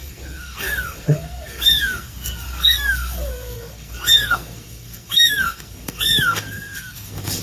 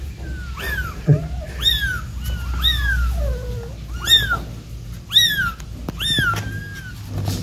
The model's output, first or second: first